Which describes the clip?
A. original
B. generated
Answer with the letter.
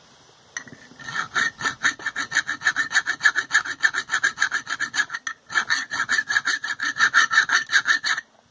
A